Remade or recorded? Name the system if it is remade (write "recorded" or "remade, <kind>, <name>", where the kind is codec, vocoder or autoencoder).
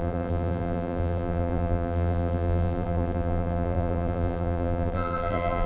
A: remade, vocoder, BigVGAN v2